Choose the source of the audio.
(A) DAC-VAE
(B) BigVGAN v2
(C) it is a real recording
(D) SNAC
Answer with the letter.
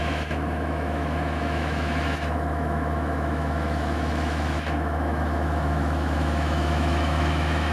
A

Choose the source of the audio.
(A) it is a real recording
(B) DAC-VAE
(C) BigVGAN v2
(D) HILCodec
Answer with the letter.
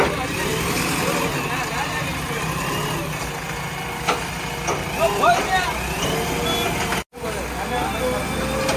A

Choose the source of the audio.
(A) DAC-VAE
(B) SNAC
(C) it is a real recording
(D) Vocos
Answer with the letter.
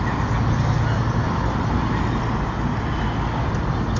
C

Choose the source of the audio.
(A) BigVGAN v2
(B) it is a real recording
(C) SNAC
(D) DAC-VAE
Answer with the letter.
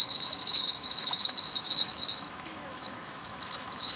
D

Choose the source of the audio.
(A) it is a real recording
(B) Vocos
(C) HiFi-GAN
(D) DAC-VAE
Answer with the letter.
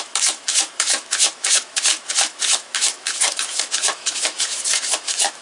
D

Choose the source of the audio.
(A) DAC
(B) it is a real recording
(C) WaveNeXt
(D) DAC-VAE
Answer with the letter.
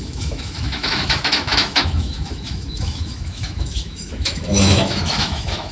D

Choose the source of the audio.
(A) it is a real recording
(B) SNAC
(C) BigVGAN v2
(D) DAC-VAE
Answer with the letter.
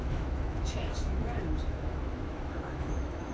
D